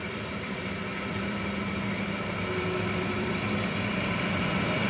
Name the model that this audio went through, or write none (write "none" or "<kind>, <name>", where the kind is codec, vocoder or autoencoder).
vocoder, BigVGAN v2